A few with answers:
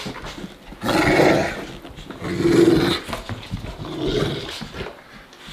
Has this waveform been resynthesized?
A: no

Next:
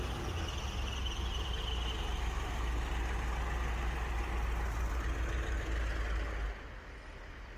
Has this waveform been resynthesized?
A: no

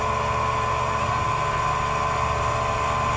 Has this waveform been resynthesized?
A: no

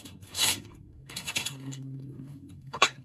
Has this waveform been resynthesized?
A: yes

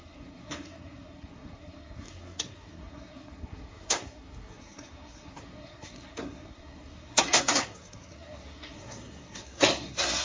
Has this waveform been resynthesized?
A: yes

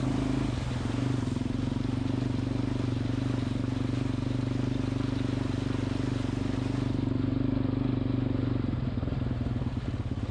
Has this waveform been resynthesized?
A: no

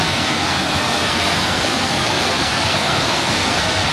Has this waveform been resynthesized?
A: yes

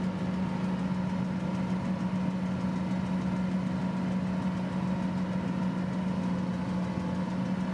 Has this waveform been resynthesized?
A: no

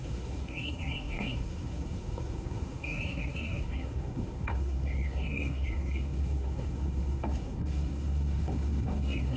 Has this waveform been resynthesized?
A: yes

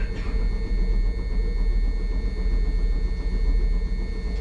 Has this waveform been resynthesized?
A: no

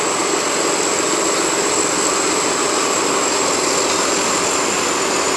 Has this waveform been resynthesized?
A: no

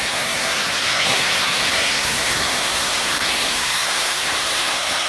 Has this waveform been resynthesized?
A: yes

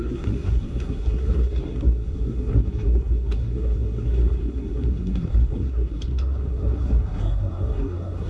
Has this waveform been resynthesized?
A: yes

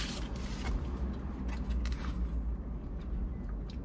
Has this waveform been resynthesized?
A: no